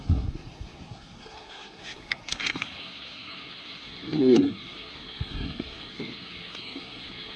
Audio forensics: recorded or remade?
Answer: remade